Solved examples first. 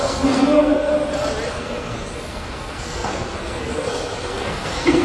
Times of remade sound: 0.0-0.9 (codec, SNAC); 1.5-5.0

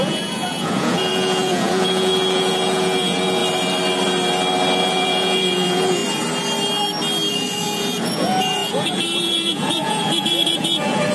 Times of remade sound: 0.0-3.4 (vocoder, Vocos); 4.8-6.0; 7.3-11.1

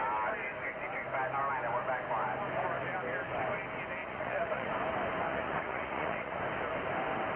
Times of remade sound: 4.0-4.7 (vocoder, Vocos); 5.3-6.4

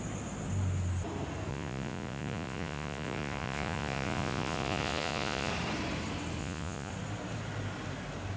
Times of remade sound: 1.5-5.5 (vocoder, Vocos); 6.4-6.9

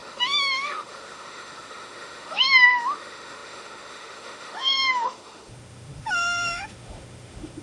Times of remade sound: 0.0-7.6 (autoencoder, DAC-VAE)

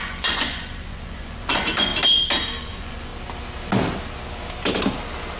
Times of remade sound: 0.0-1.9 (vocoder, Vocos); 2.6-3.1

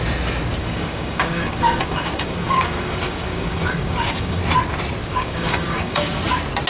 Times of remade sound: 0.6-4.4 (codec, DAC); 5.0-6.2

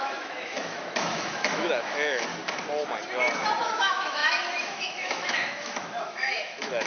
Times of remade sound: 0.0-2.3 (autoencoder, DAC-VAE); 3.6-6.9